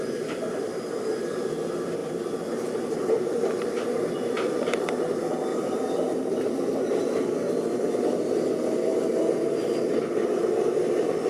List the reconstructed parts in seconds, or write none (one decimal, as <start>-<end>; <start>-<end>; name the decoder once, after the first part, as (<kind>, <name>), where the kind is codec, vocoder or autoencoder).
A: 2.0-5.0 (vocoder, BigVGAN v2); 5.5-7.0